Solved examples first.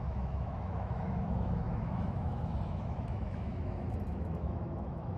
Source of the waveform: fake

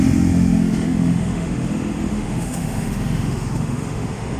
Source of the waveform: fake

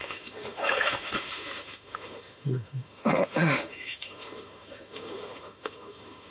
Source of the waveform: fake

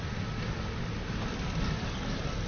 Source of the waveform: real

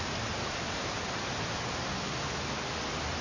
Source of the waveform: real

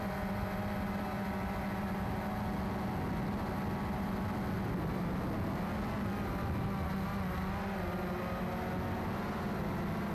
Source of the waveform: real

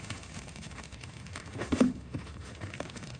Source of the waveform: fake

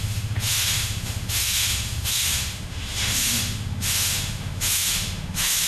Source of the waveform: fake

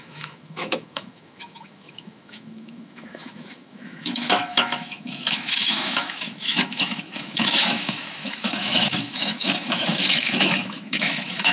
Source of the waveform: fake